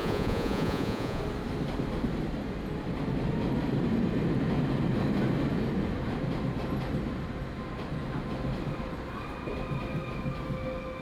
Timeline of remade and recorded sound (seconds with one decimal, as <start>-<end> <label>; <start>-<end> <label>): 0.0-1.2 remade; 1.2-11.0 recorded

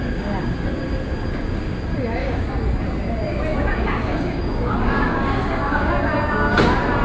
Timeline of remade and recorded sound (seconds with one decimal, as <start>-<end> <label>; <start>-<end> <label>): 0.0-2.2 recorded; 2.2-2.8 remade; 2.8-3.5 recorded; 3.5-5.9 remade; 5.9-7.0 recorded

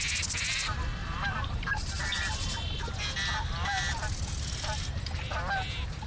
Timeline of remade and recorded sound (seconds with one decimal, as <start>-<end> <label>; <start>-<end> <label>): 0.0-1.0 recorded; 1.0-2.8 remade; 2.8-6.1 recorded

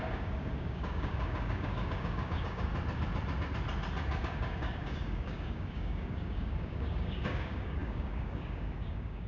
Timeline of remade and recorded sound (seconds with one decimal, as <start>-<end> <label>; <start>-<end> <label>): 0.0-2.7 remade; 2.7-4.2 recorded; 4.2-9.3 remade

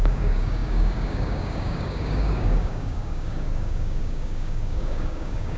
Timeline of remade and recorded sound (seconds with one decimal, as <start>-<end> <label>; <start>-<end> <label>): 0.0-5.6 remade

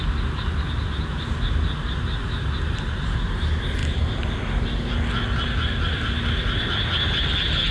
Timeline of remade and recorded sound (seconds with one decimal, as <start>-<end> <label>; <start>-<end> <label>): 0.0-3.8 recorded; 3.8-4.5 remade; 4.5-7.7 recorded

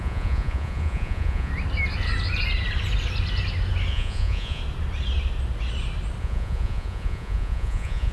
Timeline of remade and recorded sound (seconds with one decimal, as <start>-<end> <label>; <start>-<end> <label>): 0.0-1.5 remade; 1.5-3.9 recorded; 3.9-4.6 remade; 4.6-6.2 recorded; 6.2-8.1 remade